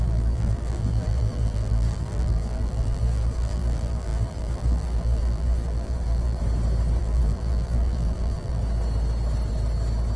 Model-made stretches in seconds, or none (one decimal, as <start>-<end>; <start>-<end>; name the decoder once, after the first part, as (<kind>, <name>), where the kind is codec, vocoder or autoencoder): 0.0-6.4 (vocoder, BigVGAN v2); 7.0-8.6

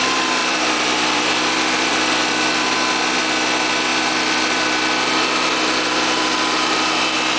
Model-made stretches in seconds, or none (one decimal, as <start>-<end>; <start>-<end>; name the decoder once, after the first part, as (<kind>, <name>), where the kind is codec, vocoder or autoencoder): 0.4-2.9 (vocoder, BigVGAN v2)

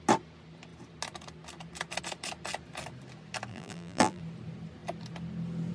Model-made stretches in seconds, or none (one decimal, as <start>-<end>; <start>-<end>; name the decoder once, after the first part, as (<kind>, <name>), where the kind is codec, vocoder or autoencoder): 3.5-4.2 (vocoder, BigVGAN v2)

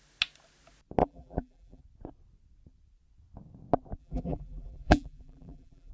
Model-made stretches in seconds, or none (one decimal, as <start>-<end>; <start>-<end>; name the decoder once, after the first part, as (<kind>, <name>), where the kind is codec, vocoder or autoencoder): 1.0-1.8 (vocoder, BigVGAN v2); 4.0-5.9

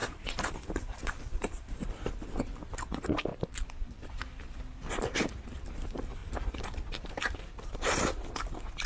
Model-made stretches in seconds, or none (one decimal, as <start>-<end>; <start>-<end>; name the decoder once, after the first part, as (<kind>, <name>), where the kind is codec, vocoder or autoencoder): 0.0-1.9 (vocoder, BigVGAN v2); 3.3-4.1; 6.2-7.2